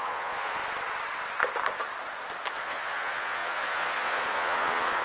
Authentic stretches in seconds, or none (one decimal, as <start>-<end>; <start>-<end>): 0.6-2.5